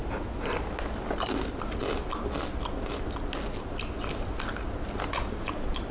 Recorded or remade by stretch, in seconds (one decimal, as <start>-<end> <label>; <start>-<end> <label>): 0.0-5.9 recorded